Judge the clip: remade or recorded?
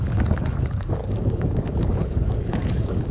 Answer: remade